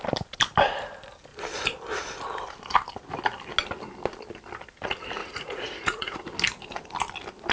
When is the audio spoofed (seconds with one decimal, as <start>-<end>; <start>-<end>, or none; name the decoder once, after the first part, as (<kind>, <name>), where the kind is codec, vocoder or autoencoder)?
5.2-6.2 (vocoder, Vocos)